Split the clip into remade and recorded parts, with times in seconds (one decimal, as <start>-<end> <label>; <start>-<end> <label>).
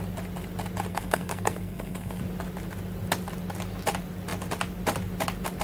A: 0.0-0.9 recorded; 0.9-2.2 remade; 2.2-5.6 recorded